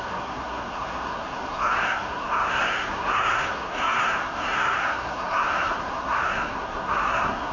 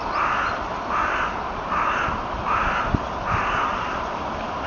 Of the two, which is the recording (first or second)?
second